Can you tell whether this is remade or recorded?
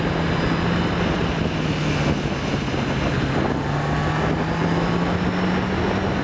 recorded